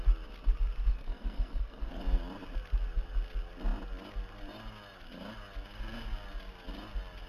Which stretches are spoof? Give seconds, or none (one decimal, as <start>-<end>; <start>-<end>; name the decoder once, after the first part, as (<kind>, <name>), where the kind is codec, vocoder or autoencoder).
0.9-2.0 (codec, SNAC)